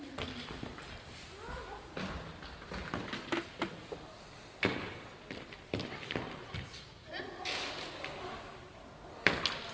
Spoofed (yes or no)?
no